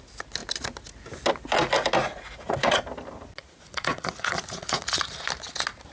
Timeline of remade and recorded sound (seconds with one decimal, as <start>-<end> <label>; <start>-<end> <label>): 0.0-2.0 recorded; 2.0-2.8 remade; 2.8-3.4 recorded; 3.4-5.0 remade; 5.0-5.9 recorded